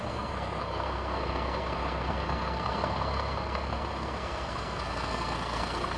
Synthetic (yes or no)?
yes